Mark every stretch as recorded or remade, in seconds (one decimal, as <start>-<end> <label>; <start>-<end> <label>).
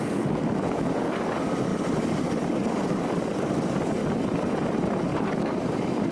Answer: 0.0-4.0 remade; 4.0-5.0 recorded; 5.0-6.1 remade